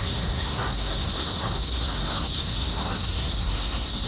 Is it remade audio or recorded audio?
remade